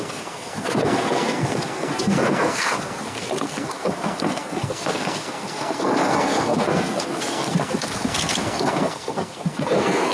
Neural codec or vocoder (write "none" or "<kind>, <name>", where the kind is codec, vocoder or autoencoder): codec, SNAC